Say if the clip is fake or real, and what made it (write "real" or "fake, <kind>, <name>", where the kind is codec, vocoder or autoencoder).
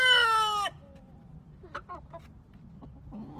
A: real